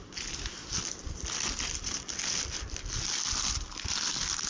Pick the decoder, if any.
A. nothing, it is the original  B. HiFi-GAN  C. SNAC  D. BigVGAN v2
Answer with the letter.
A